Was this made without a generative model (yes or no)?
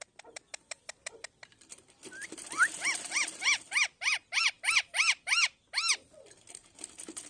yes